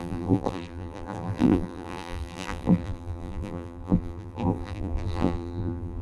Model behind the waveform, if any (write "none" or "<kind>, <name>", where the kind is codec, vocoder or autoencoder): vocoder, BigVGAN v2